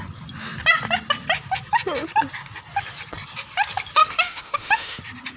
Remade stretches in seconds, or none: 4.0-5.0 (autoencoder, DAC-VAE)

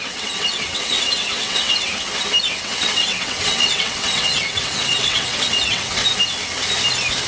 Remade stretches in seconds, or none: 0.0-1.9 (vocoder, WaveNeXt); 2.5-6.0

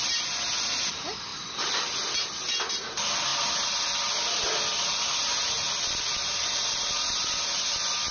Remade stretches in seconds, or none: none

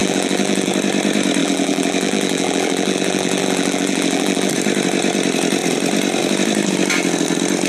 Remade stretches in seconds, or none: 0.0-0.7 (vocoder, BigVGAN v2); 1.4-4.5

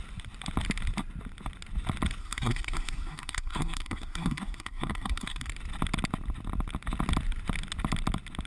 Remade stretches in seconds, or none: 2.2-5.5 (codec, SNAC)

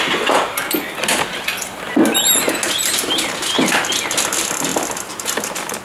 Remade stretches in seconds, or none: none